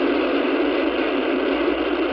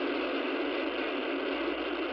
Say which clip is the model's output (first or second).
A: first